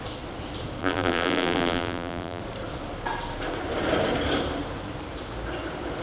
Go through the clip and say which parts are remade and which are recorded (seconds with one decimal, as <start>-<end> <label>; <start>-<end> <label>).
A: 0.0-0.8 recorded; 0.8-2.4 remade; 2.4-6.0 recorded